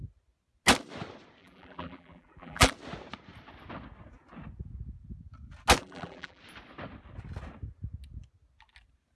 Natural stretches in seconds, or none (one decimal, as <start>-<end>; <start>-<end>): 0.0-1.4; 2.7-5.8; 6.4-9.1